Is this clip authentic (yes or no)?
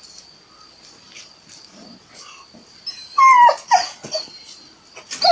yes